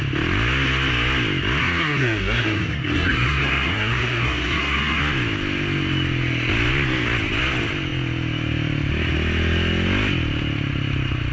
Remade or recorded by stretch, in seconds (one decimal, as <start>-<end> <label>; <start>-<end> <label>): 0.0-1.6 recorded; 1.6-5.0 remade; 5.0-11.3 recorded